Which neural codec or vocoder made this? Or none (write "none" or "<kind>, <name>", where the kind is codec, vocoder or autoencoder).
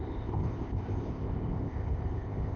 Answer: codec, ZipCodec